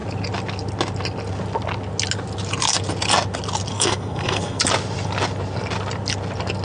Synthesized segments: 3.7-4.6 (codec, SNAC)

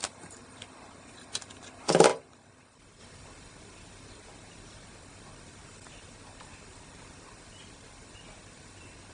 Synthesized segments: 2.1-3.0 (vocoder, BigVGAN v2)

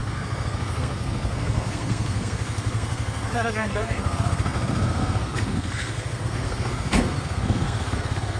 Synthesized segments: 0.0-8.4 (codec, SNAC)

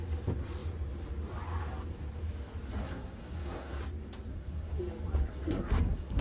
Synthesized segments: 2.8-3.8 (codec, SNAC); 4.3-4.8; 5.3-6.2

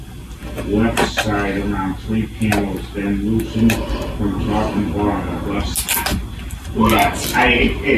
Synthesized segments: none